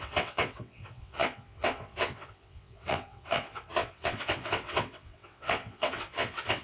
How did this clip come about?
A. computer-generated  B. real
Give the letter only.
A